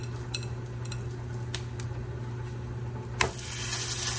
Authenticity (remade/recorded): recorded